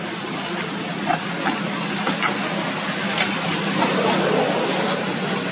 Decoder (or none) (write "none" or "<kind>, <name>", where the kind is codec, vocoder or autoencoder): none